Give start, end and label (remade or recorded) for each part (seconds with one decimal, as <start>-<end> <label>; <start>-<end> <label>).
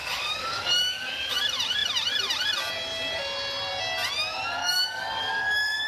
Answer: 0.0-1.3 remade; 1.3-4.6 recorded; 4.6-5.9 remade